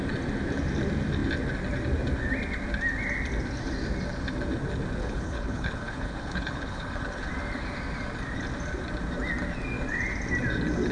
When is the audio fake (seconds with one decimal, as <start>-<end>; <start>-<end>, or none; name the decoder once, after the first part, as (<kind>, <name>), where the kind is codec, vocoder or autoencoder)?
5.0-7.3 (codec, HILCodec)